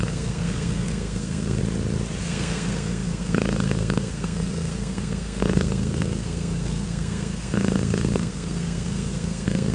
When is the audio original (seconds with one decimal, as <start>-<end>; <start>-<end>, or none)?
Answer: 1.6-2.2